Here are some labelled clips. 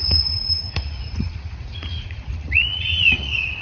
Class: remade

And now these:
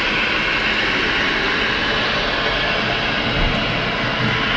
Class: recorded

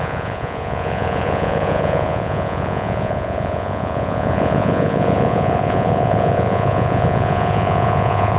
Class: remade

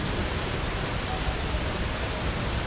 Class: recorded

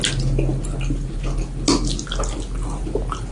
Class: recorded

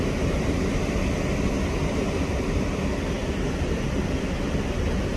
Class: recorded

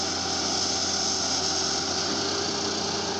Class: recorded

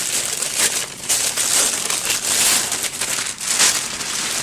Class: recorded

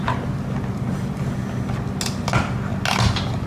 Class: recorded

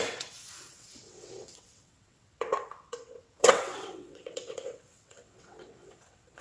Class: remade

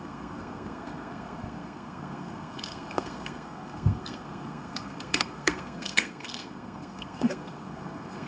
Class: remade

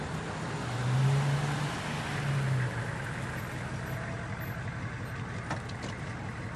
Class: recorded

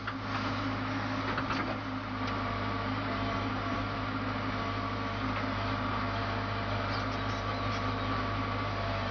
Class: recorded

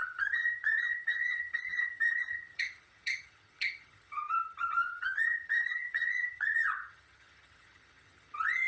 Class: remade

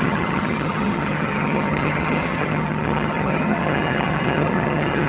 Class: remade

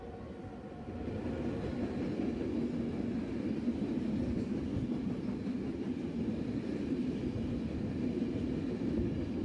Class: recorded